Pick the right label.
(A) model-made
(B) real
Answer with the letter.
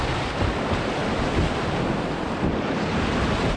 B